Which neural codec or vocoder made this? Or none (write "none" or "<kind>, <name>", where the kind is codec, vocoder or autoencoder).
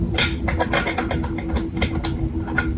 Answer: none